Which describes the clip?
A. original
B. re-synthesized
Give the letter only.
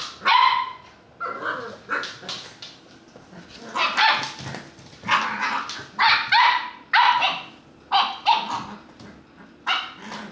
A